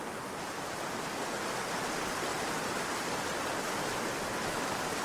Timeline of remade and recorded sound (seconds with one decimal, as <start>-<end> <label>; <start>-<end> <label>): 0.0-5.0 recorded